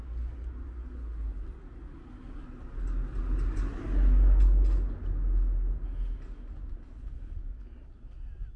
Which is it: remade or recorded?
recorded